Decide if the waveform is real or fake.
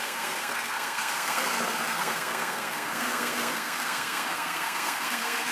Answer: fake